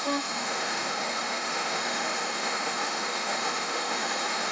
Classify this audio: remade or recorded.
remade